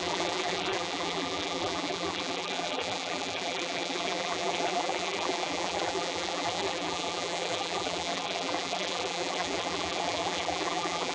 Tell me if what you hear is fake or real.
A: fake